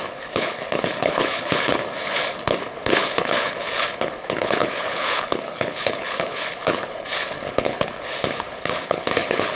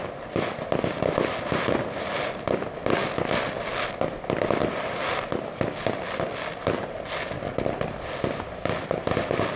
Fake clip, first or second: first